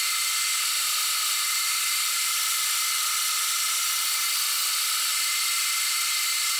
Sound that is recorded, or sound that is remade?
recorded